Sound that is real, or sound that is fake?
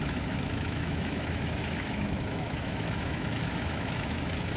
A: fake